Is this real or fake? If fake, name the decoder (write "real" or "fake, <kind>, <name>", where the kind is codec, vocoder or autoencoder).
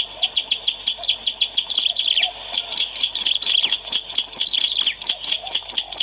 real